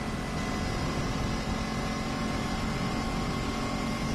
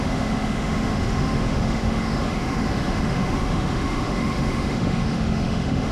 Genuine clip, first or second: first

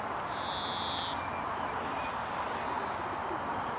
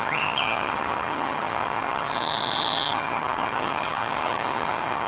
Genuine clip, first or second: first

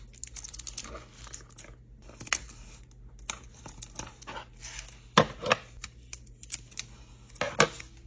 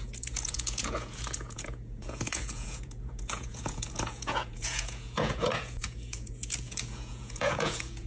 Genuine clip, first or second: first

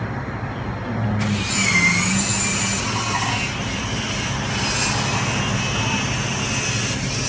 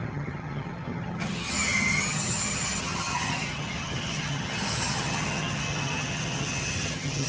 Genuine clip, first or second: first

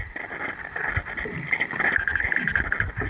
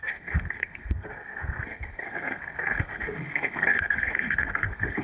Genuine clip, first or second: first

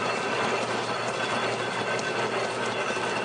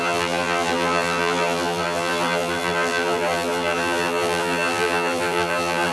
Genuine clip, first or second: first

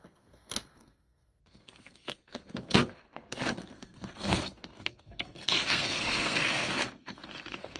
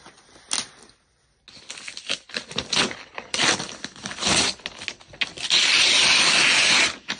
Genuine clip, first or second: second